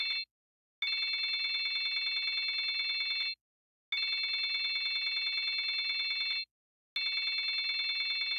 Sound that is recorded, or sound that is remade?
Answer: recorded